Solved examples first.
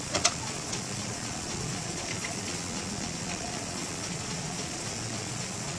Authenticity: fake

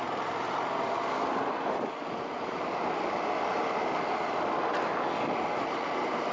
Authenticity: real